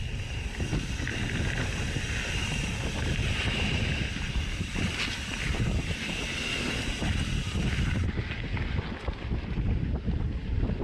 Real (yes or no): yes